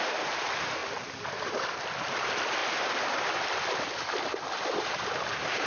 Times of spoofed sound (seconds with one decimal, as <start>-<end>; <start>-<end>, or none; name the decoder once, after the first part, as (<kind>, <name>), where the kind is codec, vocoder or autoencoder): 0.0-0.8 (vocoder, BigVGAN v2); 2.0-2.6; 4.8-5.7